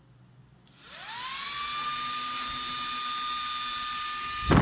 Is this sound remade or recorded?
recorded